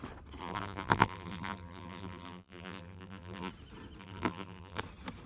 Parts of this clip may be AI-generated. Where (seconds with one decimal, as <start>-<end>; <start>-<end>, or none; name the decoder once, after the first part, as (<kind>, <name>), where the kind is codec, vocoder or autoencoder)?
0.4-3.5 (vocoder, BigVGAN v2); 4.0-4.8